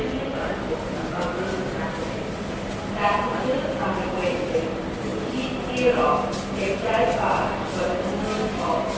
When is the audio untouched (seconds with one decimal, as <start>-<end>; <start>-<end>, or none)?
0.0-9.0